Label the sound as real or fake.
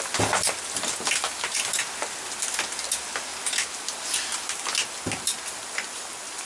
real